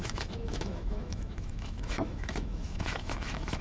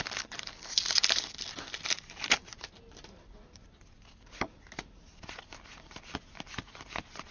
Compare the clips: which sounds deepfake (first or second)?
first